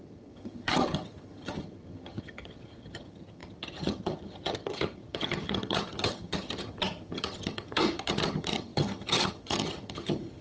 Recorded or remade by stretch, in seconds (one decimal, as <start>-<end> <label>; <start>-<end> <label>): 0.0-10.4 remade